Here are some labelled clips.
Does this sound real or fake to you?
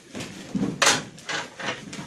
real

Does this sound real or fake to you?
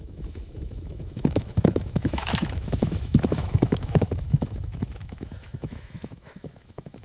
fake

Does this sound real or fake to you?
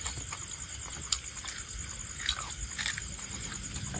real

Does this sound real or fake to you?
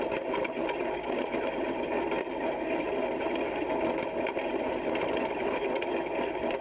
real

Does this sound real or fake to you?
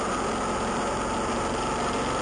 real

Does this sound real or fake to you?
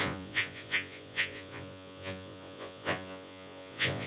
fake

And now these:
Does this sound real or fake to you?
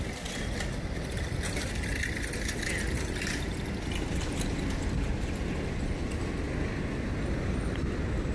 real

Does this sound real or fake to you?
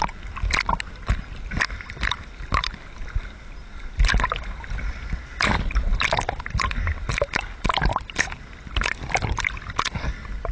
real